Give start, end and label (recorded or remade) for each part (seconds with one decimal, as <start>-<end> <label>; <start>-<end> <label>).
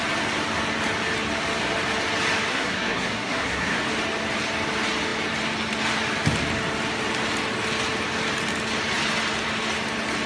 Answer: 0.0-2.5 recorded; 2.5-3.8 remade; 3.8-10.3 recorded